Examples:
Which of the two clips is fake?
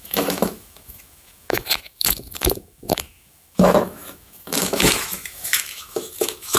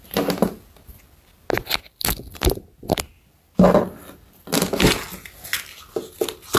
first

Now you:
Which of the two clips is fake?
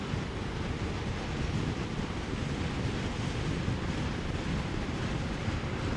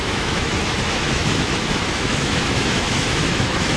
second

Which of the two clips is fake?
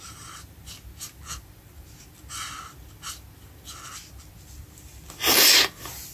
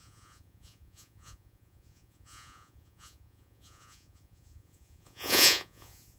second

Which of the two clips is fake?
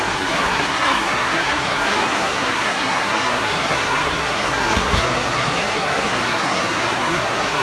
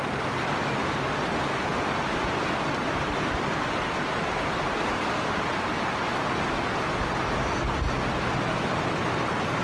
first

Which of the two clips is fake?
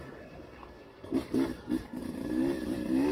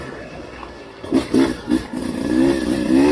first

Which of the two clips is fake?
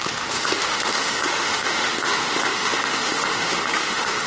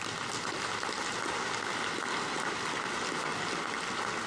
first